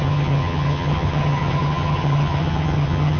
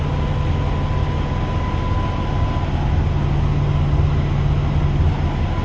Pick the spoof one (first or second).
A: first